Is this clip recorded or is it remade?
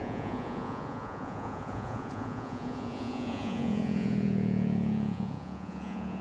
remade